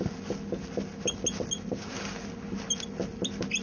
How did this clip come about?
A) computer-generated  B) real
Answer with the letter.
B